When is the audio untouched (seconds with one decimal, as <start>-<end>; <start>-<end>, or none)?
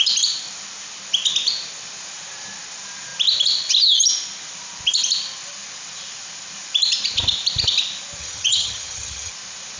0.0-8.2; 9.3-9.8